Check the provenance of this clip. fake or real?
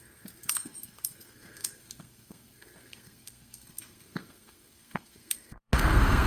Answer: fake